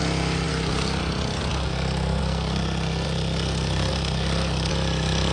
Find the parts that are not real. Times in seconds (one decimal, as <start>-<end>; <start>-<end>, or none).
0.5-1.0; 1.5-4.7